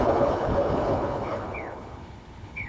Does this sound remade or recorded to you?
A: remade